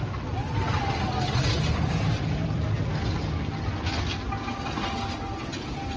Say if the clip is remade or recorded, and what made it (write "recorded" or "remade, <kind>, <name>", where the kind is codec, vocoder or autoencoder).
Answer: recorded